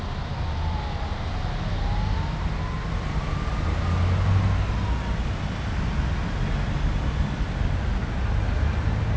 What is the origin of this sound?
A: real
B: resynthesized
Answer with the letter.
A